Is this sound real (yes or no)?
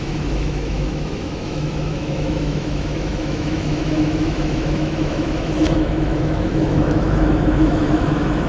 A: no